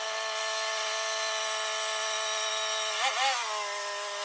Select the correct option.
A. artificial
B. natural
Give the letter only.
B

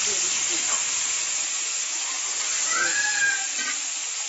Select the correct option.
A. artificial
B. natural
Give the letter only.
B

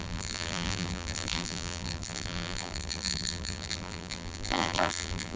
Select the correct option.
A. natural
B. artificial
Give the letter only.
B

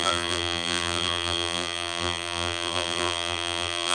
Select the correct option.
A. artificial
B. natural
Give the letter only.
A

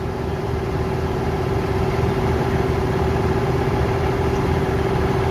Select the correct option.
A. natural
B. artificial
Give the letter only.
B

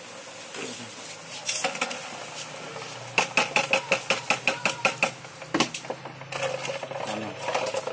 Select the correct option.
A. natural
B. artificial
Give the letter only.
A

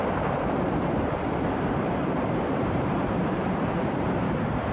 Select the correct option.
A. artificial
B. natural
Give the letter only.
A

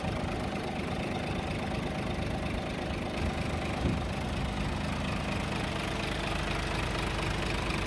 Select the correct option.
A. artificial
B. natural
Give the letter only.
B